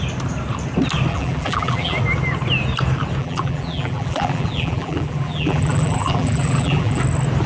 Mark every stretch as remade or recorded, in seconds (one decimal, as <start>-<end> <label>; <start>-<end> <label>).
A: 0.0-1.1 recorded; 1.1-2.0 remade; 2.0-3.2 recorded; 3.2-7.0 remade; 7.0-7.5 recorded